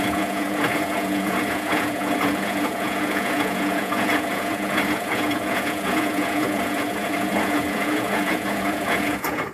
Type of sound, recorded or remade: remade